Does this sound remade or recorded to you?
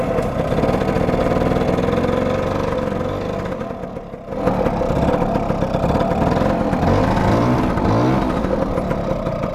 recorded